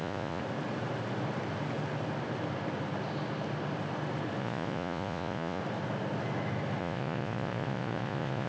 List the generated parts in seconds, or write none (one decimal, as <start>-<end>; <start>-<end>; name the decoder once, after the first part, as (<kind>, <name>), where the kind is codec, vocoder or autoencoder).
0.0-0.4 (vocoder, Vocos); 4.4-5.6; 6.8-8.5